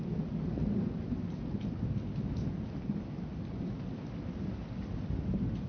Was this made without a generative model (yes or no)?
yes